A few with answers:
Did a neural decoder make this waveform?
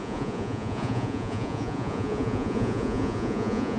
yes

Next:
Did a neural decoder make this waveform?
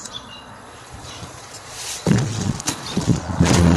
yes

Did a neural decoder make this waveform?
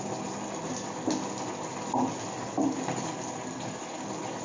no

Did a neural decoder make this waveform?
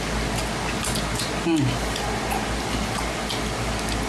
no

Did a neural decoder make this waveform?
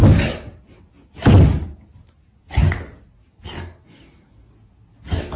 no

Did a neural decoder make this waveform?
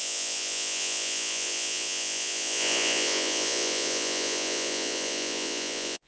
yes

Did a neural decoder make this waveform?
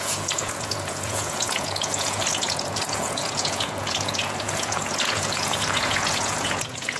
yes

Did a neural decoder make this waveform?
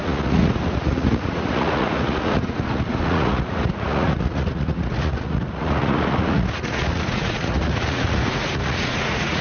yes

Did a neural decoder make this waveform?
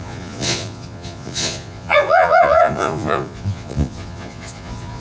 yes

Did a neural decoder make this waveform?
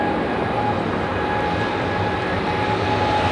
no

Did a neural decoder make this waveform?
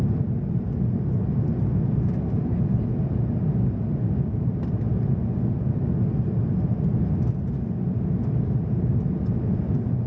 no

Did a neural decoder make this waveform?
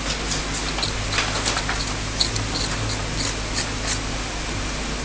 no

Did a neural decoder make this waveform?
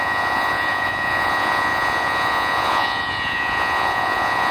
yes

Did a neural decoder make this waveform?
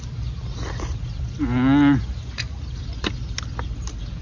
no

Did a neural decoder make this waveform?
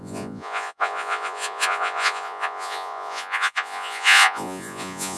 yes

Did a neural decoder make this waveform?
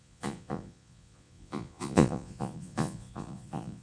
yes